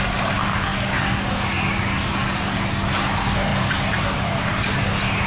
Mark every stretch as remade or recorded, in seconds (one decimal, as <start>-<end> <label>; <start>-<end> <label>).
0.0-5.3 recorded